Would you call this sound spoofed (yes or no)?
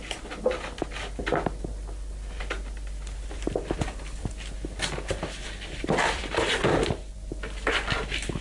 no